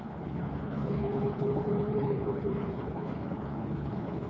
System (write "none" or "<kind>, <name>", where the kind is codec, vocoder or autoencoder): codec, HILCodec